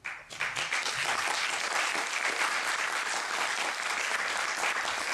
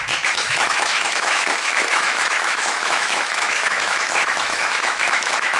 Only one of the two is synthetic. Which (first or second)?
second